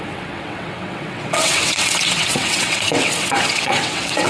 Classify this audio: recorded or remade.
remade